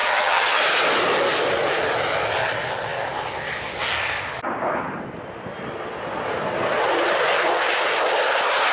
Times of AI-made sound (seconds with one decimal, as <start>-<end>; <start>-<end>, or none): 0.0-0.6